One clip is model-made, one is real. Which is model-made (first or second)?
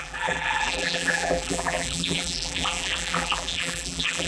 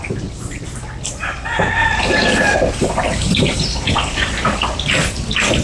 first